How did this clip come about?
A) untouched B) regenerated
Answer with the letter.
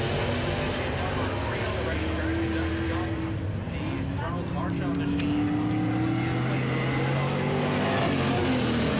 A